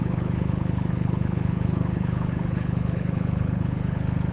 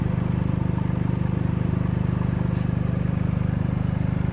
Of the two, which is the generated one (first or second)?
first